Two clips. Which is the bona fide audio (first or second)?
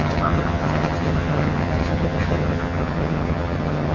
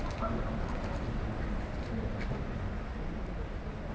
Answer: second